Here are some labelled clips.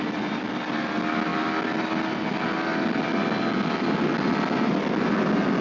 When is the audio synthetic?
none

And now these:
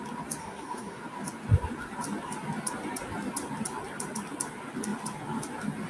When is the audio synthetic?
0.4-1.0 (codec, SNAC)

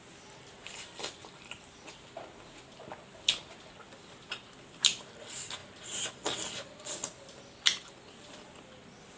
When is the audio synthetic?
none